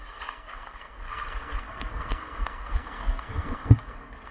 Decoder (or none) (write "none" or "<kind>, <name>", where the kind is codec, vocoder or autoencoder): codec, SNAC